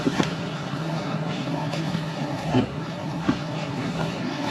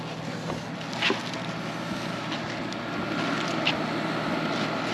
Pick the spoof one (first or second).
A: first